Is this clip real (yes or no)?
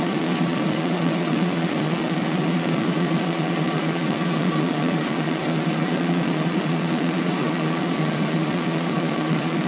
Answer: no